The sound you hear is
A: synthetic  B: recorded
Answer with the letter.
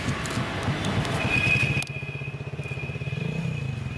B